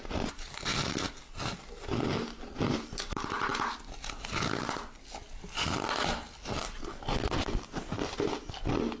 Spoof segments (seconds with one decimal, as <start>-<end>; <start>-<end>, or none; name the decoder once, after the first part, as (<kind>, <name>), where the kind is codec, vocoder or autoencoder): 0.0-0.7 (vocoder, BigVGAN v2); 2.6-3.5

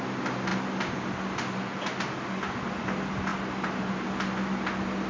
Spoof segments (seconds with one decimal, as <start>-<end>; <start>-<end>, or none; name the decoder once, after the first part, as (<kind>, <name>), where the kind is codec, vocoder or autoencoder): none

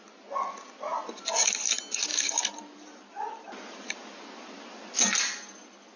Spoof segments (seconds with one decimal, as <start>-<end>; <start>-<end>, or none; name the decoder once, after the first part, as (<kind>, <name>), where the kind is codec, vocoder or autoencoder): 2.1-4.2 (vocoder, BigVGAN v2)